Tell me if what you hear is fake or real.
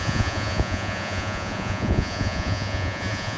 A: fake